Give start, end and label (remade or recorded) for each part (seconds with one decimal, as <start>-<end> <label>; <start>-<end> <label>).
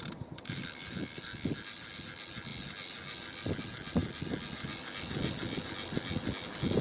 0.0-6.8 recorded